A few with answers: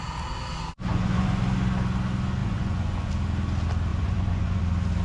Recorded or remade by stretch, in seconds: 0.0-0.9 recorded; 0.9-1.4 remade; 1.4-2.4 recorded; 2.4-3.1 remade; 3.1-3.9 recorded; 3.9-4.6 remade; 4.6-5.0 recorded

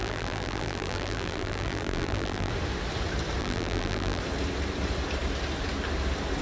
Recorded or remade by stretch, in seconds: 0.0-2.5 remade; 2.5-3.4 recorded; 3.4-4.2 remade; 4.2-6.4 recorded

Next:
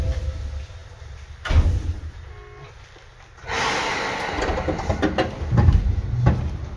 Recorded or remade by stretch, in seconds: 0.0-6.8 recorded

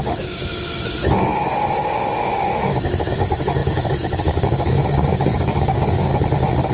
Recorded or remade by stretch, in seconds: 0.0-0.4 remade; 0.4-1.5 recorded; 1.5-6.1 remade; 6.1-6.7 recorded

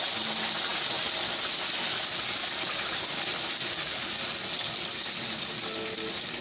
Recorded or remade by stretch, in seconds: 0.0-2.4 recorded; 2.4-5.5 remade; 5.5-6.4 recorded